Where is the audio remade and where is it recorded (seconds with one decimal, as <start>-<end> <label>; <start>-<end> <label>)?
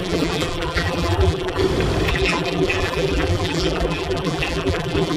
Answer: 0.0-1.6 remade; 1.6-2.1 recorded; 2.1-5.2 remade